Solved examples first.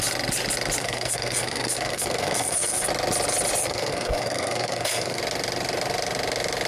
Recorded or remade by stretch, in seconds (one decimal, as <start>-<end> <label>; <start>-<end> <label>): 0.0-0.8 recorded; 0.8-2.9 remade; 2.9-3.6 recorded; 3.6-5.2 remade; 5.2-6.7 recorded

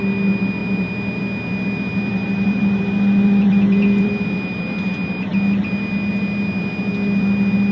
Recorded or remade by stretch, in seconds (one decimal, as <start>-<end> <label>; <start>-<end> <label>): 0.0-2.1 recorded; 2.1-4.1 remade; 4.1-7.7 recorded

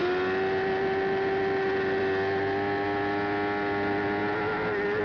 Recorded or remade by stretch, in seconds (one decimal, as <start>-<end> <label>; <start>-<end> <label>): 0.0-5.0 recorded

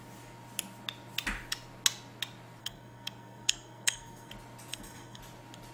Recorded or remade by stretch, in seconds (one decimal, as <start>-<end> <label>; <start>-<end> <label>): 0.0-2.6 recorded; 2.6-4.3 remade; 4.3-4.7 recorded; 4.7-5.2 remade; 5.2-5.7 recorded

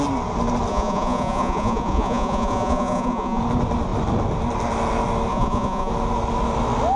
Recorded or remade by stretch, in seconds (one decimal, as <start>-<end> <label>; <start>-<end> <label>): 0.0-0.7 recorded; 0.7-3.4 remade; 3.4-5.3 recorded; 5.3-5.9 remade; 5.9-7.0 recorded

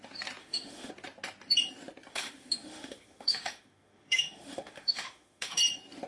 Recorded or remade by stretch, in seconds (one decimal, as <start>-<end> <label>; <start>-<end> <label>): 0.0-0.4 recorded; 0.4-0.9 remade; 0.9-2.1 recorded; 2.1-5.6 remade; 5.6-6.1 recorded